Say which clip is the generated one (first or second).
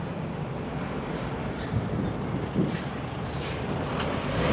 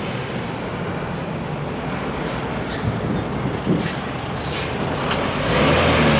first